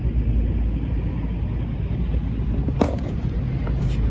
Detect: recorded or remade recorded